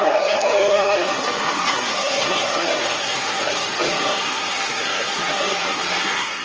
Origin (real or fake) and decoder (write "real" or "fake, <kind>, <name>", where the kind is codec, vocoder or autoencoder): fake, codec, SNAC